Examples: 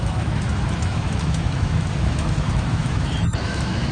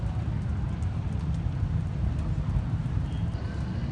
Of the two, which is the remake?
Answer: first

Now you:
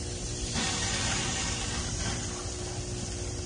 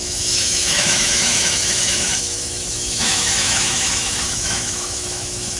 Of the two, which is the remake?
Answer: second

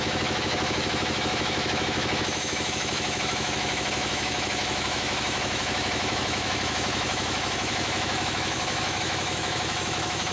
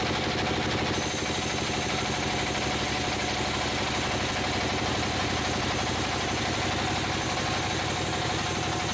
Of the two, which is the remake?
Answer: first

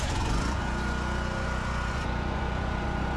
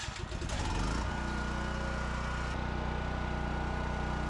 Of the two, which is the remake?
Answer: first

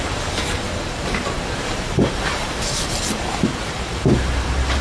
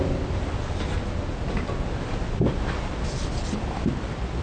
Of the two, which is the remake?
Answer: first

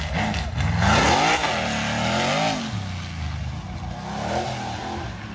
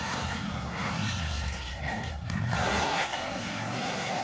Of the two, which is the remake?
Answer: second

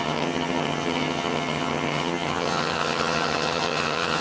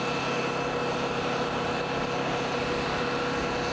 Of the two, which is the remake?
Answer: first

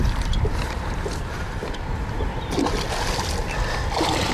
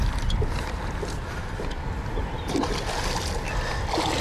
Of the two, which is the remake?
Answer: first